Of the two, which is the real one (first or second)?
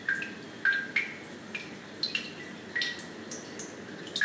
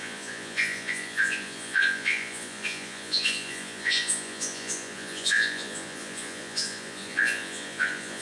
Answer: first